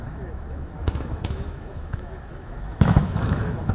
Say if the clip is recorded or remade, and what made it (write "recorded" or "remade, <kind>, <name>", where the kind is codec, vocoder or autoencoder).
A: remade, autoencoder, DAC-VAE